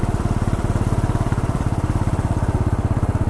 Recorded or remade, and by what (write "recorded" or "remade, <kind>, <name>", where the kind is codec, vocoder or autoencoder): remade, vocoder, BigVGAN v2